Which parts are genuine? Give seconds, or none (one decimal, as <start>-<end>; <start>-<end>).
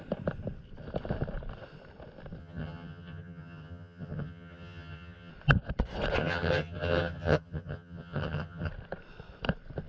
0.0-2.4; 5.3-6.2; 8.7-9.9